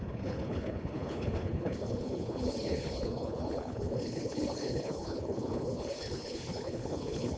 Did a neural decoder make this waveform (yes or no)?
yes